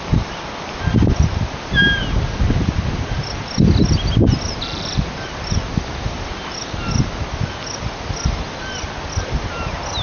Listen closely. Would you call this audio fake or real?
real